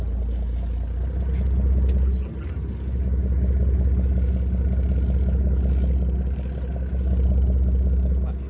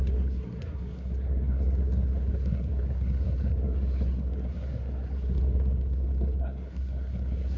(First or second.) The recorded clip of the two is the first